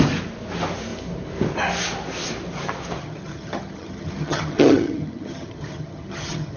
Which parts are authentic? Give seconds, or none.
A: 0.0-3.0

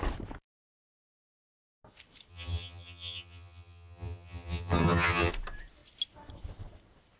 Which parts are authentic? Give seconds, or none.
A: 0.0-2.3; 5.3-7.2